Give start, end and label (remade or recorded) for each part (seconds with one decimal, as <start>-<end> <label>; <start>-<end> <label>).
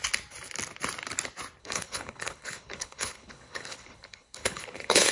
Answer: 0.0-1.6 recorded; 1.6-5.1 remade